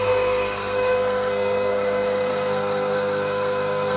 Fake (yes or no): yes